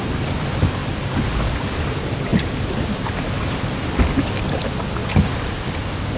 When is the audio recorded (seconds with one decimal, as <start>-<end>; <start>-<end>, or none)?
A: 2.3-4.5; 5.0-6.2